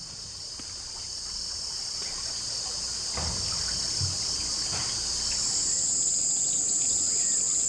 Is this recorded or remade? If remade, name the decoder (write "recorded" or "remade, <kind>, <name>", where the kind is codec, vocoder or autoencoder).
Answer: recorded